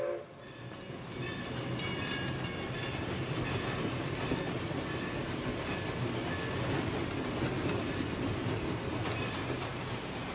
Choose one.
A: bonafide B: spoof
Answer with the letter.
A